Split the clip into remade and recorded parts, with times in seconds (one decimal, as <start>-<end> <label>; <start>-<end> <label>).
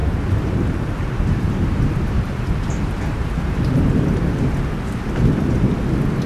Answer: 0.0-3.6 remade; 3.6-6.3 recorded